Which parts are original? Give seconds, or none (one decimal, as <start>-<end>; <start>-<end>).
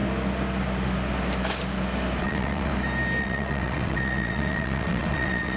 0.0-2.2; 2.7-3.2